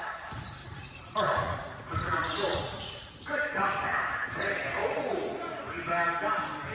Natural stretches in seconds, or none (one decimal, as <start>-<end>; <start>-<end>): 0.0-0.6; 3.1-4.8; 5.6-6.7